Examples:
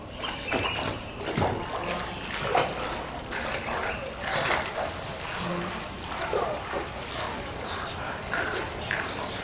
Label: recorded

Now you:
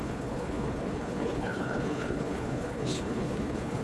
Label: remade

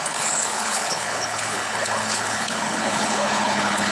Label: remade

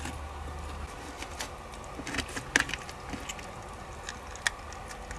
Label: recorded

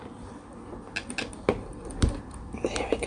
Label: recorded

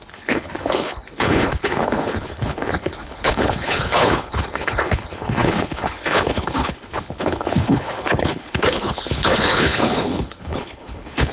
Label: remade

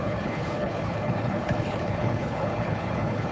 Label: remade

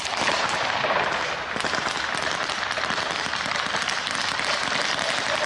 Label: recorded